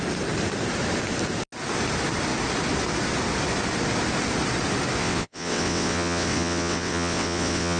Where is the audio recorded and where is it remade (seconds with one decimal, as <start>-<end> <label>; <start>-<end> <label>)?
0.0-5.0 recorded; 5.0-7.8 remade